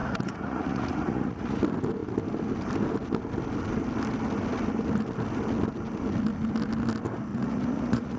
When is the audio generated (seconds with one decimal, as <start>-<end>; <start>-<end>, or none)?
0.0-1.6; 7.3-8.2